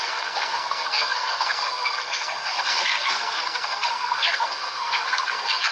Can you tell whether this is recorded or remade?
remade